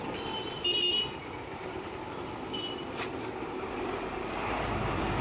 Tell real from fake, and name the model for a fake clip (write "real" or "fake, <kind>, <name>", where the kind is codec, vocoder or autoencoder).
real